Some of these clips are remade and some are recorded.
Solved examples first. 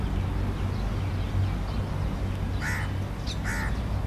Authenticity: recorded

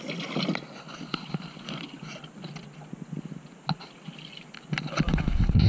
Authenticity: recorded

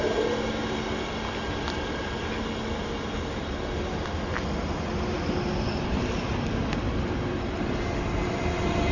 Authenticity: recorded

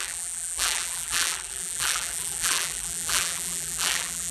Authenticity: remade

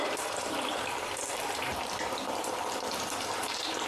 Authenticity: remade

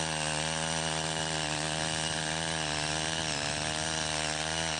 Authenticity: recorded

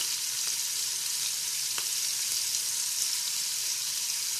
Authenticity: recorded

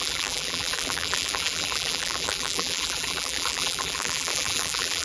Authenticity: remade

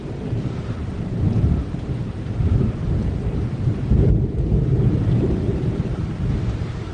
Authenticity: remade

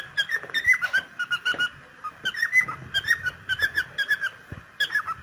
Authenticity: recorded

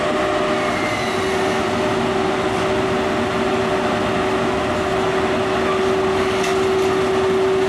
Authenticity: recorded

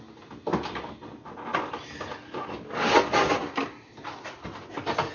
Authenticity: recorded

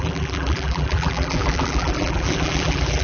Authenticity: remade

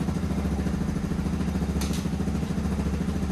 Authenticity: recorded